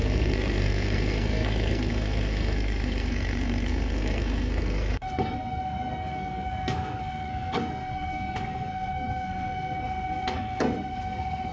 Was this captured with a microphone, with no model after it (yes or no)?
no